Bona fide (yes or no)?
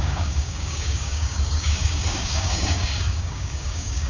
no